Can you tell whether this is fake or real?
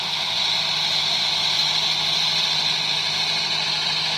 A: real